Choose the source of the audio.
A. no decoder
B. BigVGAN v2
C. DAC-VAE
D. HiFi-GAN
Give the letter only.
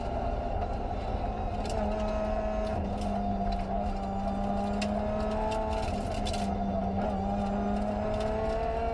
A